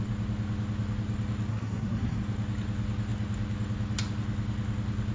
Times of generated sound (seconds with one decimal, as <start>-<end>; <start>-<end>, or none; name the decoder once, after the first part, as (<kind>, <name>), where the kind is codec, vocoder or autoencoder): 1.5-2.2 (codec, SNAC)